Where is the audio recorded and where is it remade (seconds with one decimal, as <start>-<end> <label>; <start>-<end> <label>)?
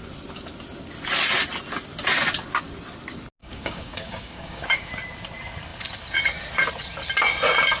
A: 0.0-3.4 recorded; 3.4-4.9 remade; 4.9-7.8 recorded